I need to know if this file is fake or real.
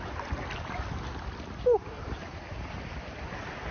real